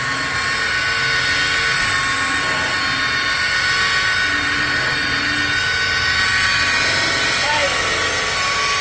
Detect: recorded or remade recorded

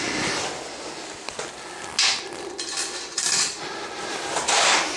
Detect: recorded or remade recorded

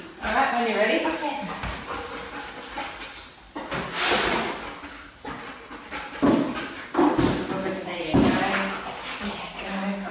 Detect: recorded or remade recorded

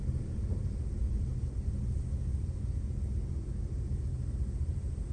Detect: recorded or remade recorded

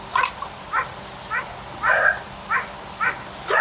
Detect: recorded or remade recorded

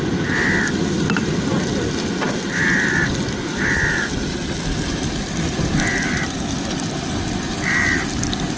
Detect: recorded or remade recorded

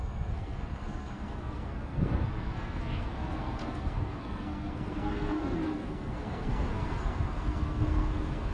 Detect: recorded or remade remade